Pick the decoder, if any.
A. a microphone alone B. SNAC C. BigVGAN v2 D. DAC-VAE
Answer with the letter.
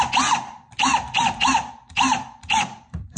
A